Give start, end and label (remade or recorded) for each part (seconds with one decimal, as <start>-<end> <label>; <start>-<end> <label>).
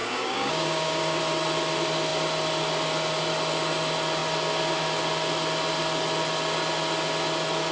0.0-1.2 remade; 1.2-7.7 recorded